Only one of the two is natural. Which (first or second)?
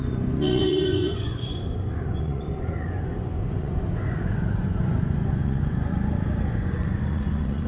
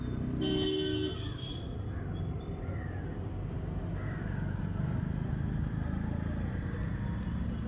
second